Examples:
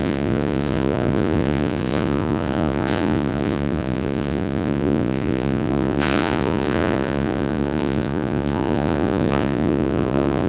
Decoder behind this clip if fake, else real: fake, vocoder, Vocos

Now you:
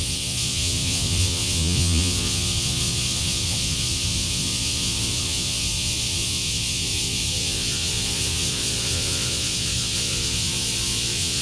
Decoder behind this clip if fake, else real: fake, vocoder, Vocos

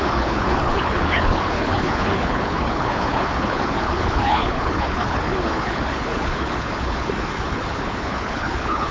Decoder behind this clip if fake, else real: fake, codec, HILCodec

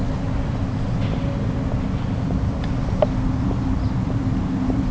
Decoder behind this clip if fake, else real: real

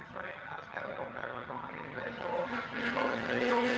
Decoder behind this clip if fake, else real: fake, vocoder, HiFi-GAN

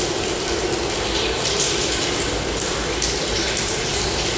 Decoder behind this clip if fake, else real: real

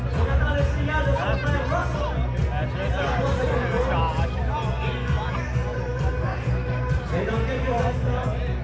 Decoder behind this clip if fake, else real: real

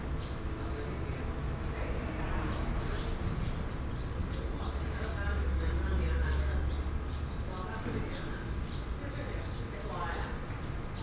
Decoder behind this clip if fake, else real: real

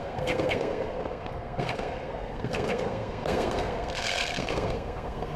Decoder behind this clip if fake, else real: fake, codec, SNAC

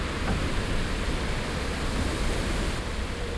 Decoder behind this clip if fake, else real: real